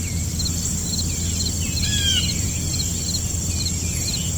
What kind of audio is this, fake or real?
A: real